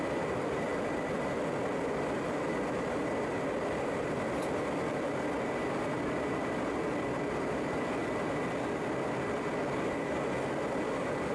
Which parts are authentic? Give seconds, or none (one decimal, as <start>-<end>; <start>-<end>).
0.0-11.3